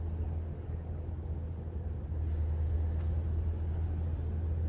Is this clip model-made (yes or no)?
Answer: no